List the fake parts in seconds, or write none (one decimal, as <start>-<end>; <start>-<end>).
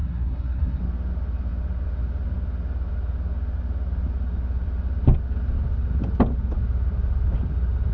0.0-0.8